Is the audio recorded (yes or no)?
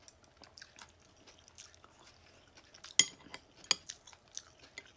yes